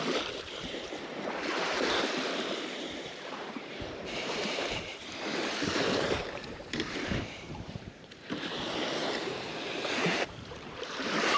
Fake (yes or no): yes